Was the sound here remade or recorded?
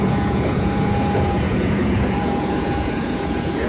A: remade